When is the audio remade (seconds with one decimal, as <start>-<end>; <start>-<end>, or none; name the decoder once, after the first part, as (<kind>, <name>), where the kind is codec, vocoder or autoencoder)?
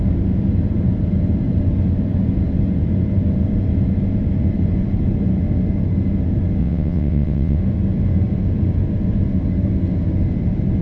6.6-7.6 (vocoder, WaveNeXt)